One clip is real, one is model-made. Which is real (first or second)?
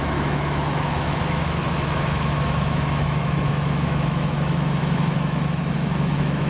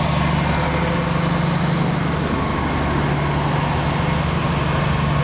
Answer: second